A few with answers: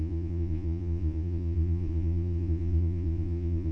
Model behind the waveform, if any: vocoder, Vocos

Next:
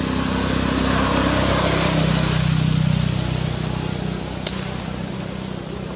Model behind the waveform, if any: none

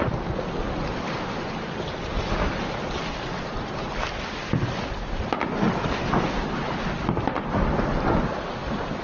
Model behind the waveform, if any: none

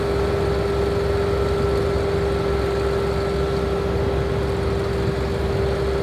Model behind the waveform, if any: none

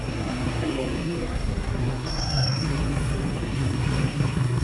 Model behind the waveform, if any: codec, SNAC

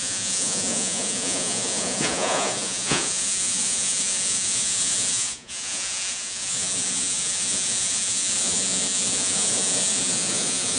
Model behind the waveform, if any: vocoder, Vocos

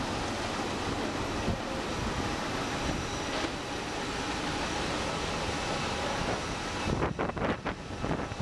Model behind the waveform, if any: none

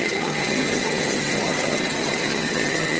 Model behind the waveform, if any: vocoder, HiFi-GAN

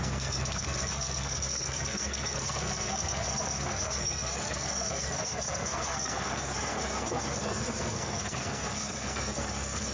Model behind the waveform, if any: codec, SNAC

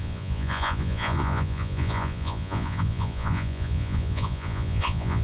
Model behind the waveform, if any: vocoder, Vocos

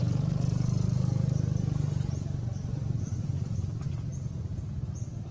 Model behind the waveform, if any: none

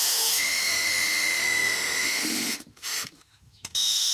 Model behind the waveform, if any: autoencoder, DAC-VAE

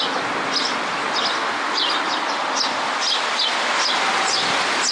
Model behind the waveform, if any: none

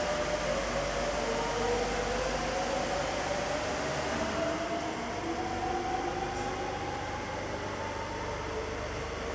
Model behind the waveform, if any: none